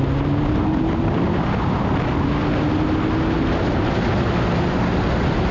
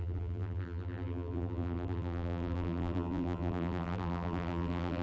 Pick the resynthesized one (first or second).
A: second